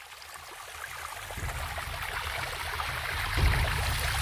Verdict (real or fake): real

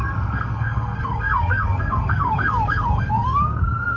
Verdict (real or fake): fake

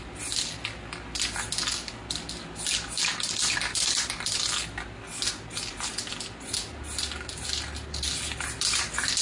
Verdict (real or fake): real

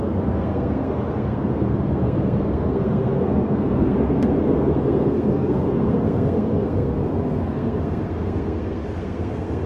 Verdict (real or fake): fake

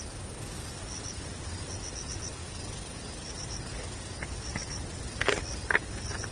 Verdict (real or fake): real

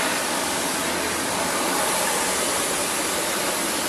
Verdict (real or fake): real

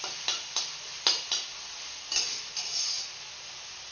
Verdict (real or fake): real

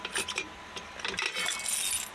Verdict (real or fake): real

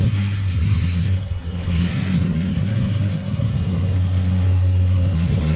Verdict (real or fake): fake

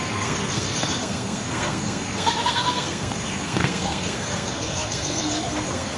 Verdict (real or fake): fake